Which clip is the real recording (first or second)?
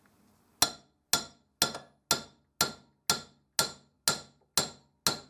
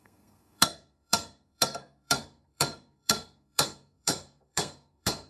first